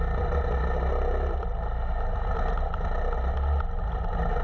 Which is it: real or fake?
real